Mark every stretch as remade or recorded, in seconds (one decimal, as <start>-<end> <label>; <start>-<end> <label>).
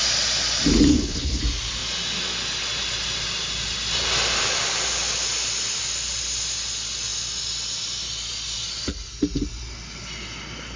0.0-0.9 recorded; 0.9-1.4 remade; 1.4-10.8 recorded